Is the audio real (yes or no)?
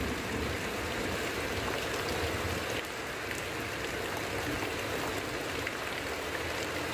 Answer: yes